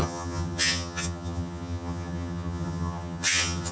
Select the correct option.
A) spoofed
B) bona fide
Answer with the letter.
A